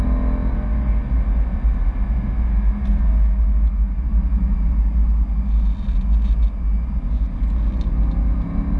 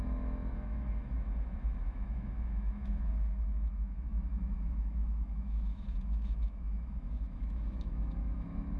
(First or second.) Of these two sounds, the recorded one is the first